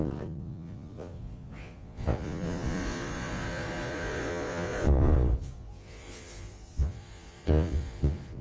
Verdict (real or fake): fake